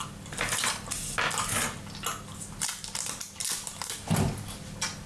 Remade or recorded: recorded